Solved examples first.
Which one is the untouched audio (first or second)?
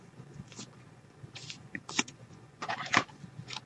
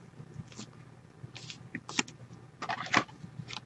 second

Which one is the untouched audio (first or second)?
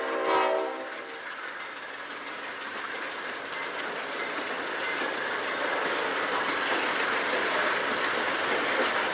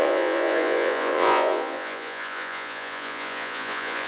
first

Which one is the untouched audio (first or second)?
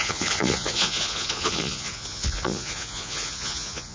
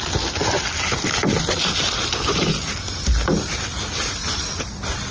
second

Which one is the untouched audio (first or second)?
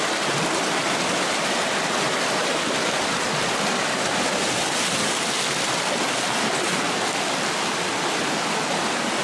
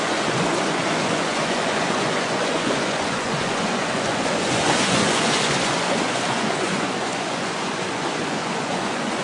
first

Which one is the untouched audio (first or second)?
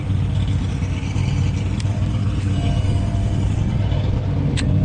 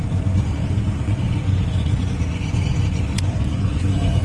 first